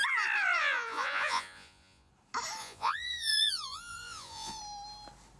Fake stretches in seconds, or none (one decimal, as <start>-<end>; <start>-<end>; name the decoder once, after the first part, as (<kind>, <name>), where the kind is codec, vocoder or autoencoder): 0.6-2.1 (vocoder, Vocos); 2.6-4.6